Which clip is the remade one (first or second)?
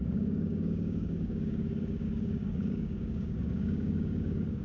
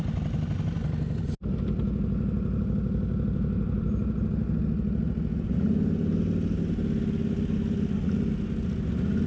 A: first